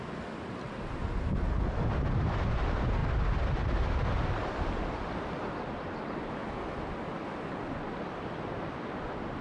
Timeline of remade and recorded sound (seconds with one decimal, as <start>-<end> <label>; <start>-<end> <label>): 0.0-9.4 recorded